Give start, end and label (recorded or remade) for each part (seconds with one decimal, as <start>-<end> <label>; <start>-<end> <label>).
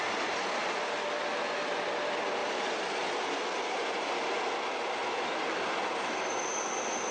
0.0-2.4 recorded; 2.4-4.5 remade; 4.5-5.0 recorded; 5.0-6.2 remade; 6.2-7.1 recorded